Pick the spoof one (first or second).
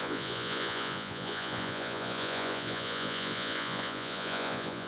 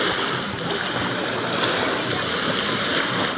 first